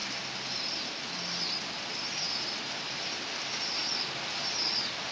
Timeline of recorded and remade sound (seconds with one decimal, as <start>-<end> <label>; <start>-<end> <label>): 0.0-5.1 recorded